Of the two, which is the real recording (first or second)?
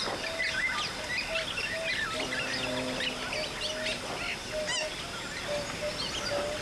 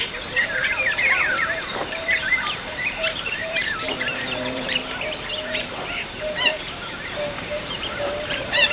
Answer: first